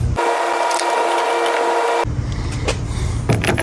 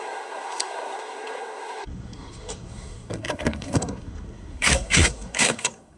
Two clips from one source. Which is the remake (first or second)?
second